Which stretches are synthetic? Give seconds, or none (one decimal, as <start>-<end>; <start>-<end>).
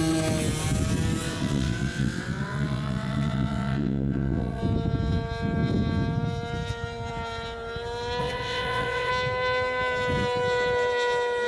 1.2-4.6; 8.2-9.1